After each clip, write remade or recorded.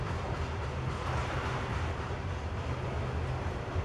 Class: recorded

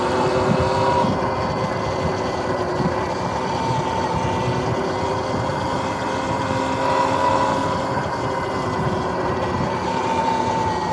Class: recorded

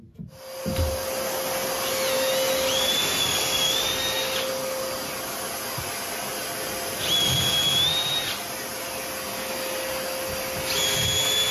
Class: recorded